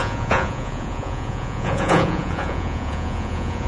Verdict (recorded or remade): remade